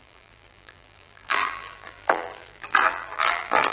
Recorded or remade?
remade